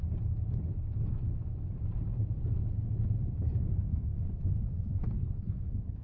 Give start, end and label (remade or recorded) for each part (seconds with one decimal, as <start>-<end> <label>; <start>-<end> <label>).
0.0-3.6 recorded; 3.6-4.1 remade; 4.1-5.1 recorded; 5.1-6.0 remade